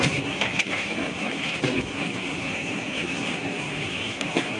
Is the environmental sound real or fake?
fake